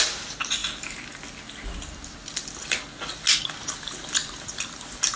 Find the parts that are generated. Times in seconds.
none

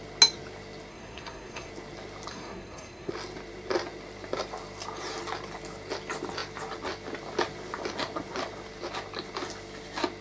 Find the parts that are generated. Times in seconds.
0.9-1.7 (codec, SNAC); 2.3-3.1

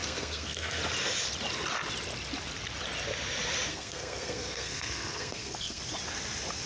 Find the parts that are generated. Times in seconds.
0.0-0.8 (codec, SNAC); 3.7-5.8

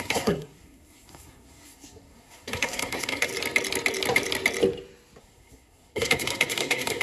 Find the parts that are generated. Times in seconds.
0.0-3.3 (codec, SNAC); 5.2-7.0

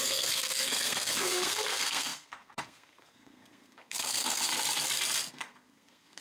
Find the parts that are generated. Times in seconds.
0.0-4.5 (codec, SNAC); 5.3-6.2

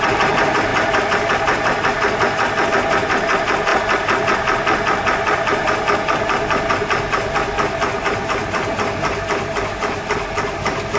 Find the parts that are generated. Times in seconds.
none

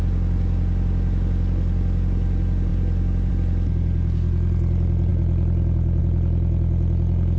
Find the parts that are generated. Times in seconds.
none

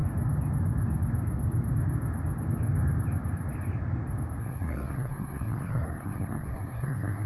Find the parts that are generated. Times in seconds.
4.4-7.3 (codec, SNAC)